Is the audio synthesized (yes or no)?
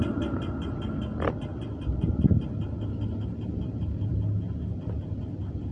no